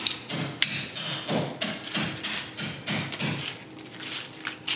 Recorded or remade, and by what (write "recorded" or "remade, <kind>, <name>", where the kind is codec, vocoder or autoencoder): recorded